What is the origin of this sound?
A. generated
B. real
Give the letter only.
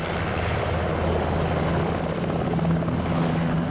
B